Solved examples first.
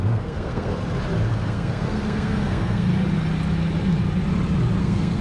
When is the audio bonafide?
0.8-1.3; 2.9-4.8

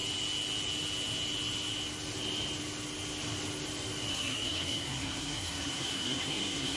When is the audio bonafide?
0.0-4.1

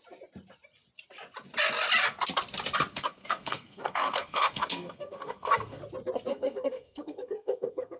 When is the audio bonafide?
0.0-2.9; 5.8-6.3

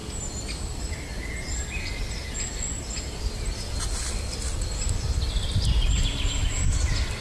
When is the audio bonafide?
0.0-7.2

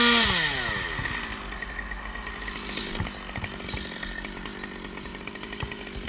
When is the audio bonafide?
0.0-6.1

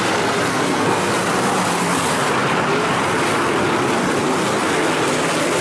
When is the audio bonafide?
0.0-0.5; 1.1-5.6

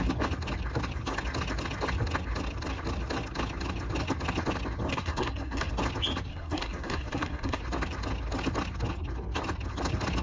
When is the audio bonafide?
0.0-4.9; 5.7-6.3; 7.6-10.2